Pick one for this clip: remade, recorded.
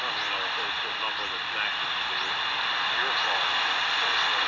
recorded